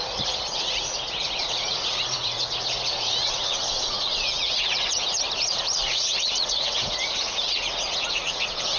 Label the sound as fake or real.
fake